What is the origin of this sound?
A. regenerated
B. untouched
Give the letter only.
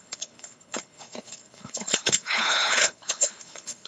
A